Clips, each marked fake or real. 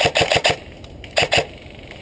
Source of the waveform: fake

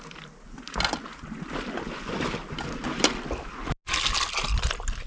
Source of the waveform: real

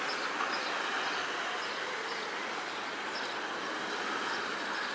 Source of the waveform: real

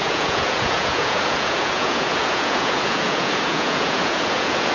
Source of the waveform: fake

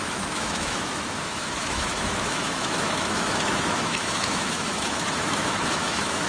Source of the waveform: fake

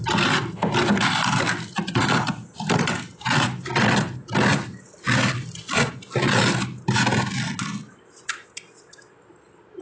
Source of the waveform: real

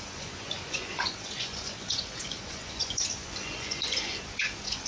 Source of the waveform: fake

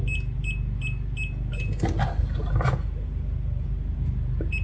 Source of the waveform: real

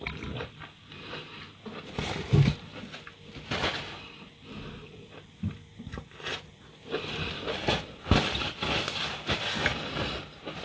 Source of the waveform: real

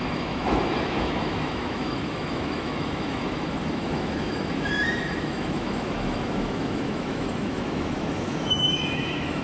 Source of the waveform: fake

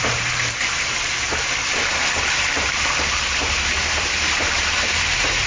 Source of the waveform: fake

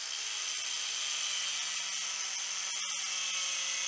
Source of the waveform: real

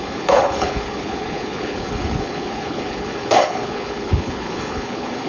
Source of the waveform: fake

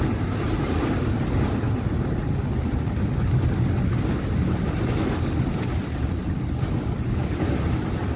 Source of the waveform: real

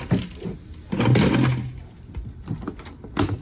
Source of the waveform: real